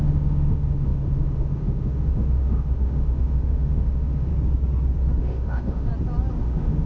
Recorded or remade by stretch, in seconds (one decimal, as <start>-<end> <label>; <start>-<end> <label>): 0.0-4.3 remade; 4.3-5.2 recorded; 5.2-5.9 remade; 5.9-6.4 recorded; 6.4-6.9 remade